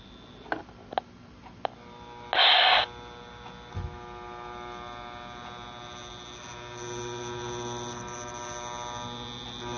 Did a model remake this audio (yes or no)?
no